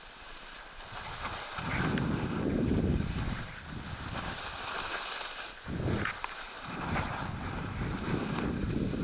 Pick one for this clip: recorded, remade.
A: remade